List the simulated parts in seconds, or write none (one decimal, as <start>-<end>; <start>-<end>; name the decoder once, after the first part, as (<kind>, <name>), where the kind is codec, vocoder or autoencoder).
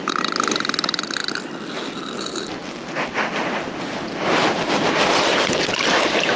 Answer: none